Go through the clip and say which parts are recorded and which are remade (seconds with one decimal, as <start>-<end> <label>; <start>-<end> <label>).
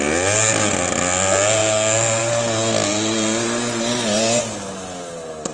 0.0-5.5 recorded